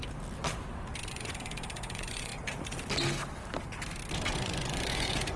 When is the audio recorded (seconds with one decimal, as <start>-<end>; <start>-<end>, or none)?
0.0-1.1; 2.3-4.3